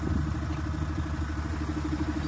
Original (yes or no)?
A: yes